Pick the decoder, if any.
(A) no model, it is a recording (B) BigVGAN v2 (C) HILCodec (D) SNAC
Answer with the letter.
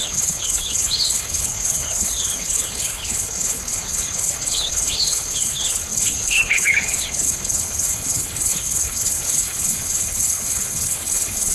C